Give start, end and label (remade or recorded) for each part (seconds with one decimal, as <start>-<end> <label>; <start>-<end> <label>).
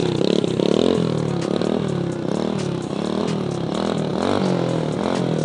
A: 0.0-5.4 recorded